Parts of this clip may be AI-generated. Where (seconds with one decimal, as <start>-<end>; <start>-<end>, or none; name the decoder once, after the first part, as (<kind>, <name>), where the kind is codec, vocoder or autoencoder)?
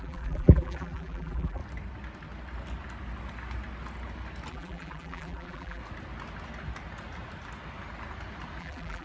0.0-1.6 (vocoder, BigVGAN v2); 4.5-5.8; 8.6-9.0